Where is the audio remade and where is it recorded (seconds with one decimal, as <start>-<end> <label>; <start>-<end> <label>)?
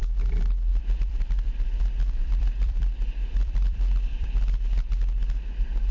0.0-0.7 recorded; 0.7-1.8 remade; 1.8-2.2 recorded; 2.2-4.9 remade; 4.9-5.9 recorded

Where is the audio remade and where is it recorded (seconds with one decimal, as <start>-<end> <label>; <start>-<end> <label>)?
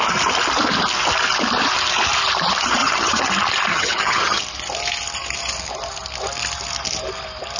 0.0-2.8 recorded; 2.8-3.3 remade; 3.3-3.7 recorded; 3.7-4.4 remade; 4.4-7.6 recorded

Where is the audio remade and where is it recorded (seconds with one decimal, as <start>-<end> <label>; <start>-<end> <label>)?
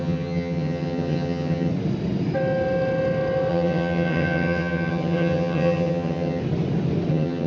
0.0-1.7 remade; 1.7-3.5 recorded; 3.5-6.4 remade; 6.4-7.1 recorded; 7.1-7.5 remade